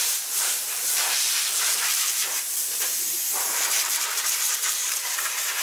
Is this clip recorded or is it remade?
remade